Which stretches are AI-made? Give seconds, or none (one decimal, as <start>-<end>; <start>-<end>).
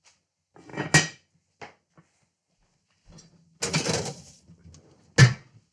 none